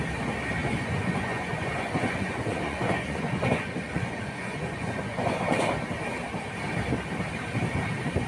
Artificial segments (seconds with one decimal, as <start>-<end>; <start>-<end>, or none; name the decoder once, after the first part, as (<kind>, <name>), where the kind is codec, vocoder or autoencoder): 0.6-5.6 (vocoder, Vocos)